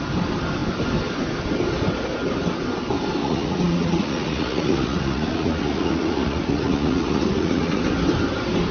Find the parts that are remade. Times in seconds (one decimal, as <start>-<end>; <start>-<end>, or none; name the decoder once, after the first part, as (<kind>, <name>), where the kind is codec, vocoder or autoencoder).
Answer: 3.2-7.8 (vocoder, Vocos)